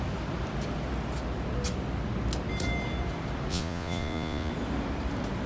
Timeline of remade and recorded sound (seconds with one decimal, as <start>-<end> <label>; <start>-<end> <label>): 0.0-3.5 recorded; 3.5-4.5 remade; 4.5-5.5 recorded